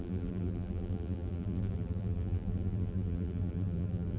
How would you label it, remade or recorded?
remade